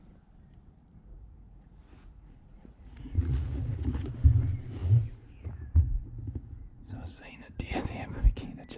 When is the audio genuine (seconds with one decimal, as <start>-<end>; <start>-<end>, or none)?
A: 0.0-1.1; 4.1-4.8; 7.8-8.8